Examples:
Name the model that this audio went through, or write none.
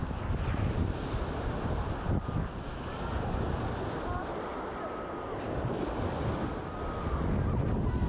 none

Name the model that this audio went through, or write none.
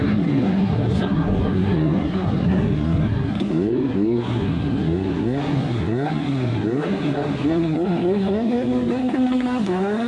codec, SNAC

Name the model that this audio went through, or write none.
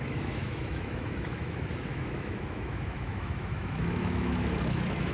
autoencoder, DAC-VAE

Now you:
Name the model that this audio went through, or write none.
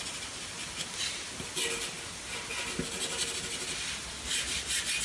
none